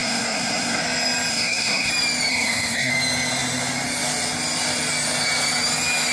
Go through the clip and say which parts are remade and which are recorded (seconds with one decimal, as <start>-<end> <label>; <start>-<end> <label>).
0.0-0.8 remade; 0.8-1.3 recorded; 1.3-1.9 remade; 1.9-2.3 recorded; 2.3-2.9 remade; 2.9-6.1 recorded